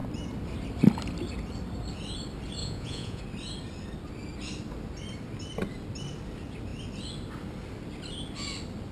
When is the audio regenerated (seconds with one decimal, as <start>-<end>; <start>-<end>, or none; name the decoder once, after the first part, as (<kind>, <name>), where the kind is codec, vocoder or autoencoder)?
2.6-3.2 (vocoder, Vocos)